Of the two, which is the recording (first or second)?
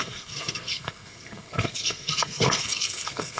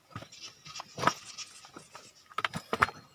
second